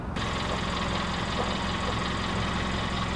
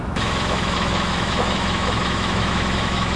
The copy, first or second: second